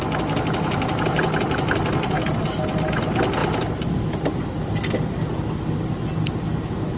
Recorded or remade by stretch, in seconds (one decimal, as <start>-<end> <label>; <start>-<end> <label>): 0.0-7.0 recorded